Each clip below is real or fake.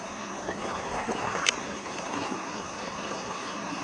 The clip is fake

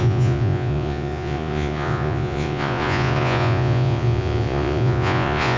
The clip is fake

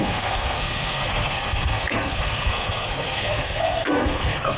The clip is fake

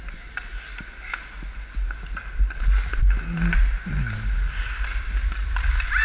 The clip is real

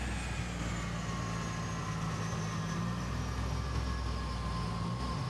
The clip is real